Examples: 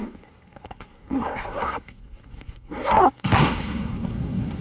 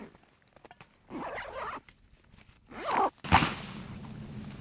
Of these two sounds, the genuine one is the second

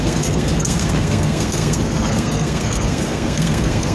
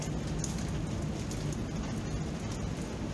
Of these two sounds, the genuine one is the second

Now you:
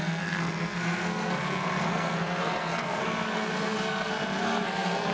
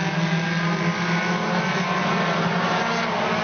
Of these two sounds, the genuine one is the second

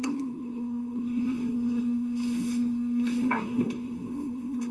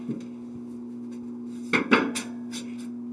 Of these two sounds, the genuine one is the second